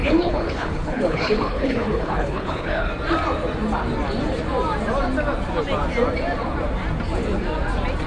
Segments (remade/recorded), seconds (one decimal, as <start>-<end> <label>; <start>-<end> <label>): 0.0-2.9 remade; 2.9-8.1 recorded